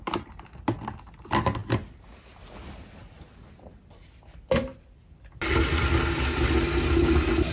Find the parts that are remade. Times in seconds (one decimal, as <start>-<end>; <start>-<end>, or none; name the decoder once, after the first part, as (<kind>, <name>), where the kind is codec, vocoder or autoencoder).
none